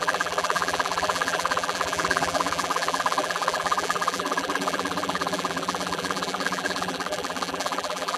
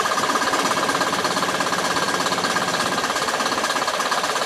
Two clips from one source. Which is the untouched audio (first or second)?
second